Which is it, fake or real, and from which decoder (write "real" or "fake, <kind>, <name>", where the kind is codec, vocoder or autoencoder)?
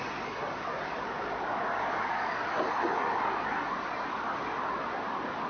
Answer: real